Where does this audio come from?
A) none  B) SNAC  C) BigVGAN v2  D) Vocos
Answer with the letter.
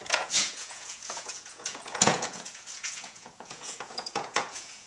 D